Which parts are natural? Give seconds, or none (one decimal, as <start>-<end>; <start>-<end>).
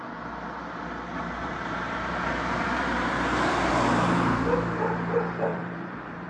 0.0-1.1; 3.7-5.5